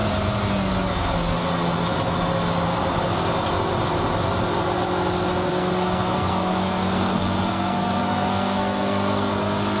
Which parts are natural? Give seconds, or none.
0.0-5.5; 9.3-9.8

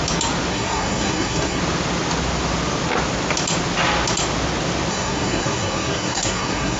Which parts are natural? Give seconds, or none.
0.0-0.5; 1.6-4.9

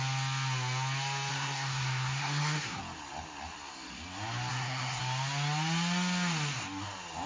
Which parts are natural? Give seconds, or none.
0.0-1.3; 2.8-4.5; 5.0-7.3

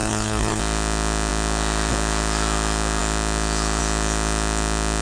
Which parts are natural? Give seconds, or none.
0.6-5.0